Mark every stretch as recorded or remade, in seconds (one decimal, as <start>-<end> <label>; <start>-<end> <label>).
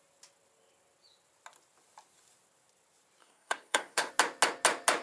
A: 0.0-3.2 recorded; 3.2-4.1 remade; 4.1-5.0 recorded